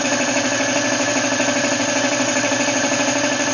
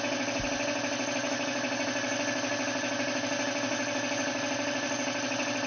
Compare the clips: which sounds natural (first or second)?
second